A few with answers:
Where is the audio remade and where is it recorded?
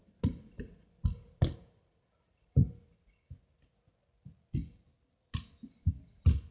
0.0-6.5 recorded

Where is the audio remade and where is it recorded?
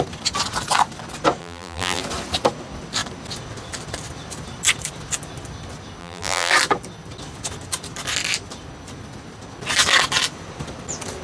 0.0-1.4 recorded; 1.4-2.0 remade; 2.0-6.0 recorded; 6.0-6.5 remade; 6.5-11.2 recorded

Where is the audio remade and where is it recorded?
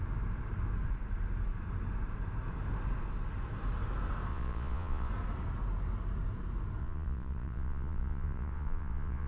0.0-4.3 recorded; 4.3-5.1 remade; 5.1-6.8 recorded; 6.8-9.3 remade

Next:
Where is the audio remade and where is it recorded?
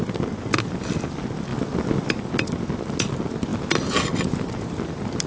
0.0-5.3 recorded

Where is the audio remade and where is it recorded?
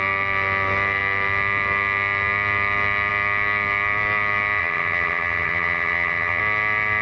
0.0-4.6 recorded; 4.6-6.4 remade; 6.4-7.0 recorded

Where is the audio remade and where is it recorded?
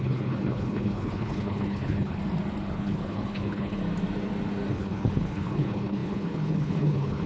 0.0-2.2 remade; 2.2-2.7 recorded; 2.7-3.8 remade; 3.8-4.7 recorded; 4.7-7.3 remade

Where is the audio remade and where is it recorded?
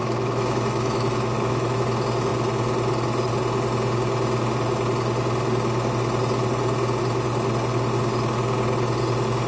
0.0-1.8 remade; 1.8-9.5 recorded